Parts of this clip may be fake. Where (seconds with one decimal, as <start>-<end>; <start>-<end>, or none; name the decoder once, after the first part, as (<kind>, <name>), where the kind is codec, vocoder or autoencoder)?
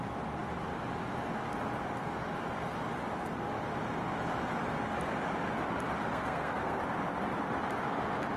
6.1-6.8 (codec, SNAC)